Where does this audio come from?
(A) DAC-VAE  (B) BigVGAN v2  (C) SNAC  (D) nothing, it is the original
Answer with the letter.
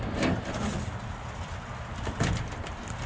D